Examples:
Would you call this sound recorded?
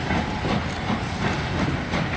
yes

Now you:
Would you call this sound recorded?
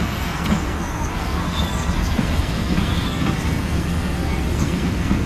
no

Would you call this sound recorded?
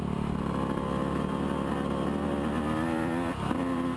yes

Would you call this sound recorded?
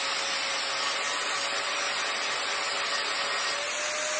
yes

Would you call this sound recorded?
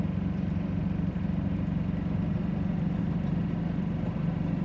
yes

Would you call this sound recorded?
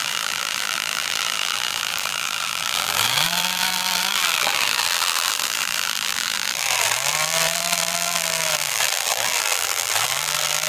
no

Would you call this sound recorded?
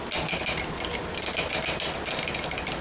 yes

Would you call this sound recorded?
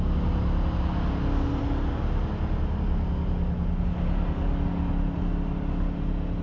yes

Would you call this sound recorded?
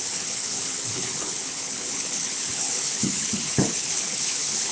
no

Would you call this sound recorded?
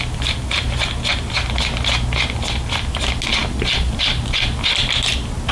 yes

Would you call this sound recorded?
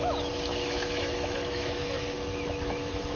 no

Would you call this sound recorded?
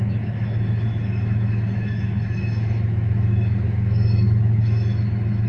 no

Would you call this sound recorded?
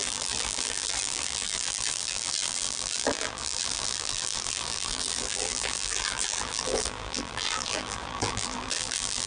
no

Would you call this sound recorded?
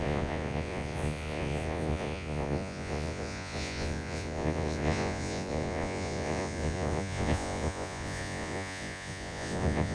no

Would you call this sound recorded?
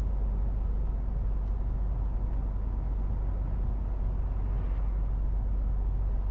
yes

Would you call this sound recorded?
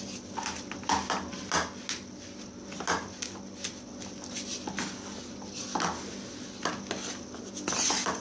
yes